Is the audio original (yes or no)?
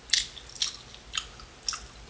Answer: yes